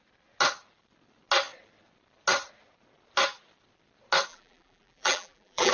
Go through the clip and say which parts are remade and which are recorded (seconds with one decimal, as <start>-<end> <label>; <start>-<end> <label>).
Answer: 0.0-4.3 recorded; 4.3-5.7 remade

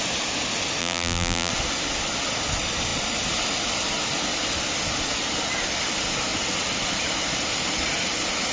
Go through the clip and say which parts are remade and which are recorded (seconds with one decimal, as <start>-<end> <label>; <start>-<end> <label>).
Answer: 0.0-0.8 recorded; 0.8-1.5 remade; 1.5-8.5 recorded